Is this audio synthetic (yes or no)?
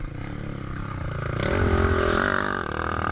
no